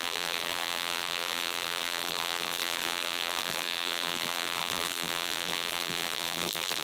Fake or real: fake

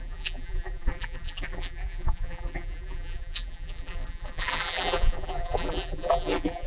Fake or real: fake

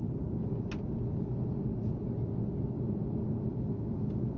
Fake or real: real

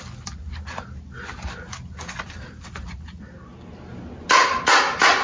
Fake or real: real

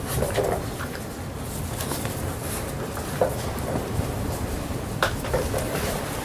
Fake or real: fake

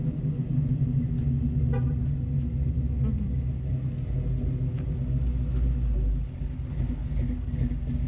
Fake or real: real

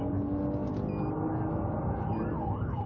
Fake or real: real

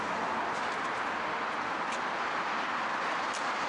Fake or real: real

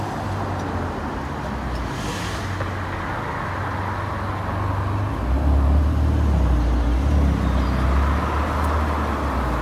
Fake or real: real